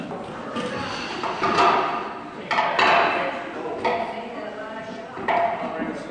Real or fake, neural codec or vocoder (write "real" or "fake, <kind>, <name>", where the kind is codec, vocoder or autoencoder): real